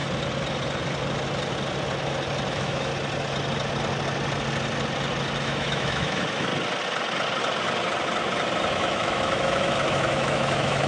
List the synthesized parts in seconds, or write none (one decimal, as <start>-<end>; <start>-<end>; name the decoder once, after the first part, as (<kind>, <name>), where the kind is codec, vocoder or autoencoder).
2.5-2.9 (autoencoder, DAC-VAE); 5.4-6.5; 8.7-10.9